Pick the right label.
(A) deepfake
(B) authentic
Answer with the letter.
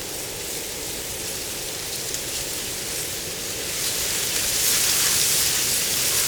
B